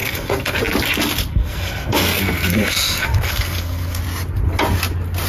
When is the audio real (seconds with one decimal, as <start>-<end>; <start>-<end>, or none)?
0.6-1.3; 4.0-5.3